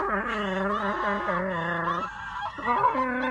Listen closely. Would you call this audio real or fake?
real